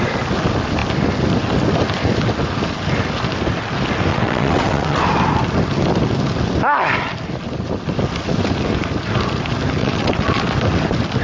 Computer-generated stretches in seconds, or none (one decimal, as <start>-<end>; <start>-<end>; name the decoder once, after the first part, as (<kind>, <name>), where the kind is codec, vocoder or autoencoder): 4.1-5.0 (vocoder, WaveNeXt); 9.8-10.4